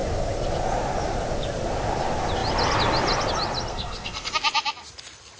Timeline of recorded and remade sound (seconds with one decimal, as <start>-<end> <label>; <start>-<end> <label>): 0.0-3.7 recorded; 3.7-4.3 remade; 4.3-5.4 recorded

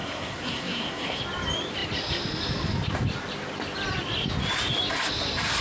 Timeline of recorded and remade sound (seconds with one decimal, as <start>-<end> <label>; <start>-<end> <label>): 0.0-1.2 remade; 1.2-5.6 recorded

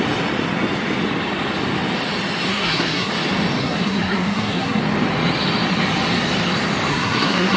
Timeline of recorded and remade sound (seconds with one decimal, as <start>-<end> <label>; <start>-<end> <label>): 0.0-2.5 recorded; 2.5-3.1 remade; 3.1-3.6 recorded; 3.6-4.8 remade; 4.8-6.9 recorded; 6.9-7.6 remade

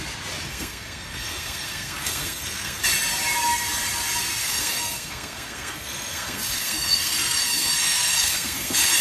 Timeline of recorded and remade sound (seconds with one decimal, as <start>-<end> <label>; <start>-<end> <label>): 0.0-0.5 recorded; 0.5-2.8 remade; 2.8-4.4 recorded; 4.4-9.0 remade

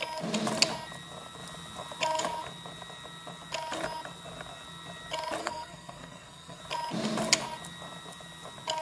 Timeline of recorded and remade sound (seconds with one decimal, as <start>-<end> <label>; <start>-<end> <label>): 0.0-5.4 recorded; 5.4-6.6 remade; 6.6-8.8 recorded

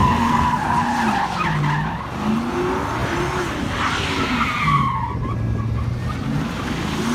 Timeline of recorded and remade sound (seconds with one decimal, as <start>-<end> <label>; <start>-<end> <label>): 0.0-0.6 remade; 0.6-7.1 recorded

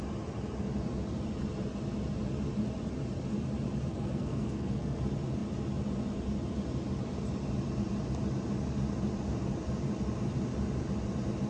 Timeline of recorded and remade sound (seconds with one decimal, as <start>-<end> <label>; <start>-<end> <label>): 0.0-3.9 recorded; 3.9-5.0 remade; 5.0-11.5 recorded

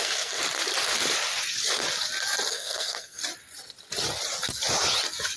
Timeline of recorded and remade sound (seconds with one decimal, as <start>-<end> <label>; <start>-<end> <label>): 0.0-0.4 remade; 0.4-2.5 recorded; 2.5-3.2 remade; 3.2-5.4 recorded